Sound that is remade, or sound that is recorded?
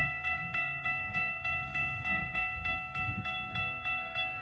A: remade